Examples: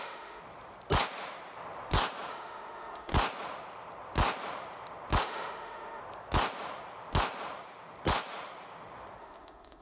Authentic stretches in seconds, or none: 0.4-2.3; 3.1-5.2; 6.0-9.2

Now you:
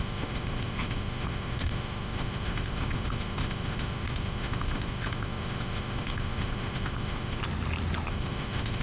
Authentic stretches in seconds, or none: 7.4-8.1